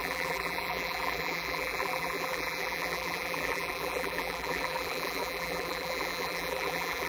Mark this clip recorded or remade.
remade